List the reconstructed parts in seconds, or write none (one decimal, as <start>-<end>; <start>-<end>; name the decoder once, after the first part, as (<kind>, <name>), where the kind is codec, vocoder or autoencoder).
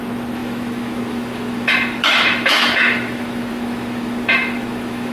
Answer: 0.0-5.1 (autoencoder, DAC-VAE)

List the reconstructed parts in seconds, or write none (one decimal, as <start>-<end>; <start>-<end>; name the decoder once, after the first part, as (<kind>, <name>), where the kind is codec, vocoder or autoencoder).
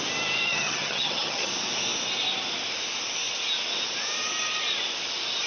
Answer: 0.5-1.5 (vocoder, HiFi-GAN)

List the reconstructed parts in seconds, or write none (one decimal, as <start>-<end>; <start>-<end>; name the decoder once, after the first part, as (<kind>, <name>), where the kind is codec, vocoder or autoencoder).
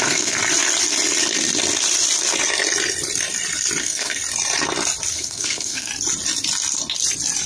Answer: 0.0-0.4 (codec, SNAC); 3.8-4.2; 5.1-5.9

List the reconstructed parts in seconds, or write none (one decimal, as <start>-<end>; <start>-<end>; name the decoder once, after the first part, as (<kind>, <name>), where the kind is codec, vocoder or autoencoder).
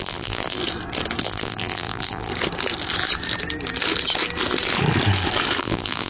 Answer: 0.0-0.6 (vocoder, BigVGAN v2); 1.2-2.3; 5.6-6.1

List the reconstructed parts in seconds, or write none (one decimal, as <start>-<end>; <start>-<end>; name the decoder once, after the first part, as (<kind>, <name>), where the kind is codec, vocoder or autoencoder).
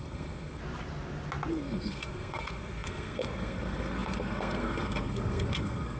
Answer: 0.0-0.6 (codec, SNAC); 1.5-6.0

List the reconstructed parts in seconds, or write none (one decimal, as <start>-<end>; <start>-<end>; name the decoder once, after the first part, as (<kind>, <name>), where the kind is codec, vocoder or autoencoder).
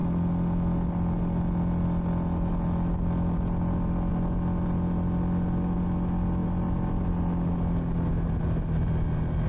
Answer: none